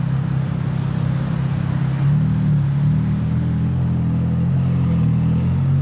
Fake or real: real